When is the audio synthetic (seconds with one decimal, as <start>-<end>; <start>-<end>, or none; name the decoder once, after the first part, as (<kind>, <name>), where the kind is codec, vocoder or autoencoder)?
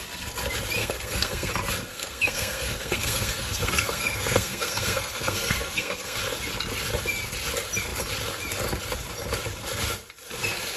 0.8-1.5 (codec, SNAC); 1.9-6.2